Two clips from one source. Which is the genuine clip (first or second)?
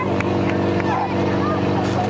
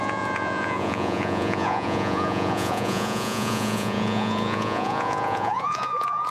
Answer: first